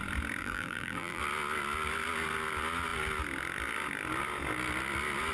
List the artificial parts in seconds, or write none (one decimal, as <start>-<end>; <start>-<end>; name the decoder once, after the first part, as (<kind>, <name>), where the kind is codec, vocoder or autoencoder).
0.4-1.2 (vocoder, BigVGAN v2)